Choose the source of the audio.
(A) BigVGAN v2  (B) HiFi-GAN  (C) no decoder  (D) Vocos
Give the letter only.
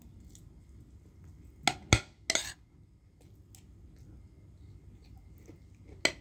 C